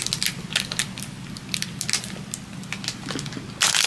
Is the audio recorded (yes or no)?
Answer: yes